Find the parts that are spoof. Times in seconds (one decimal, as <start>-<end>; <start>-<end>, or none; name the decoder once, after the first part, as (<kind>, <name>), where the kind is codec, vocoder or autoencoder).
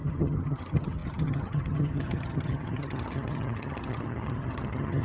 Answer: 0.0-5.0 (vocoder, HiFi-GAN)